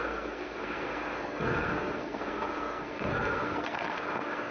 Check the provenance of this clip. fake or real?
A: fake